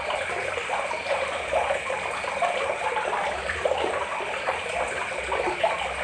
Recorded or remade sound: recorded